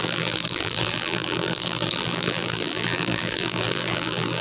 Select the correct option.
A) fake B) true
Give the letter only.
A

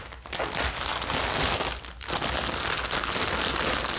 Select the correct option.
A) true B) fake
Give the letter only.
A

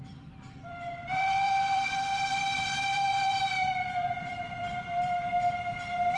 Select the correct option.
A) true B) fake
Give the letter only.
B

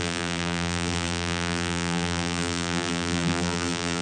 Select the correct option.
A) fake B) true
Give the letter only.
A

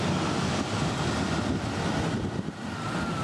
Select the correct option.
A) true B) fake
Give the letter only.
A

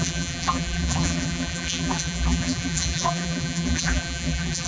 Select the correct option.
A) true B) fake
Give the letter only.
B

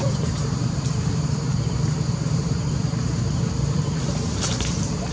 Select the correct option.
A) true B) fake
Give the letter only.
B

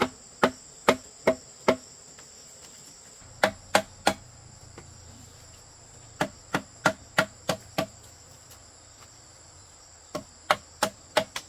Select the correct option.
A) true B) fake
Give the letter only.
A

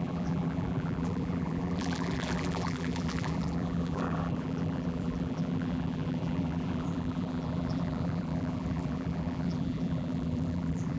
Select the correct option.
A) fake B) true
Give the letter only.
A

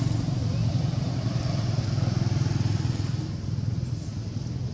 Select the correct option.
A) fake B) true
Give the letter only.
A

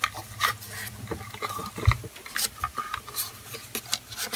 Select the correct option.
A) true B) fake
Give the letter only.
A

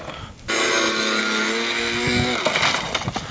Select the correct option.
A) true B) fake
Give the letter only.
A